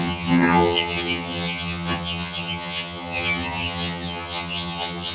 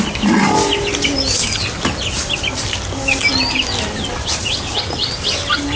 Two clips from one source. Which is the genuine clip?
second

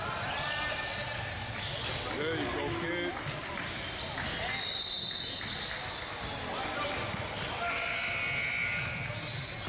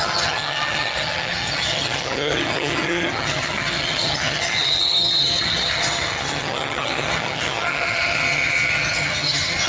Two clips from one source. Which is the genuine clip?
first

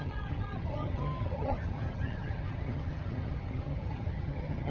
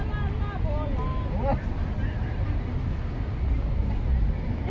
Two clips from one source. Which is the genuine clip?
second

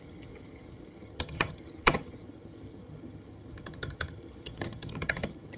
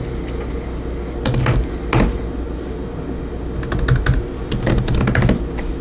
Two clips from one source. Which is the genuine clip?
second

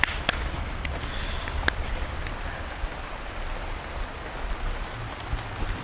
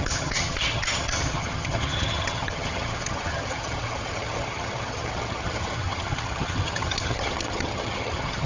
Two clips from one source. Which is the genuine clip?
first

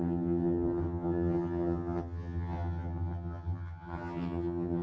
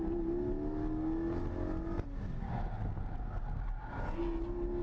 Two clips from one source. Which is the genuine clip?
second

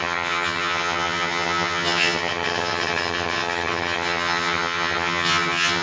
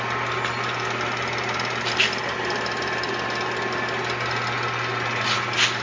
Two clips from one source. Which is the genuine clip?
second